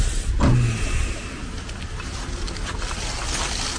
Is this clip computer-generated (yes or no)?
no